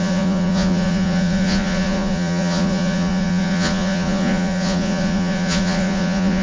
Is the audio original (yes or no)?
no